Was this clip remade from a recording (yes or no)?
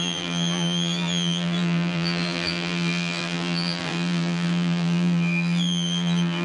yes